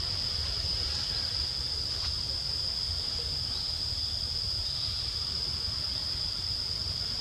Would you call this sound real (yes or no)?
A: yes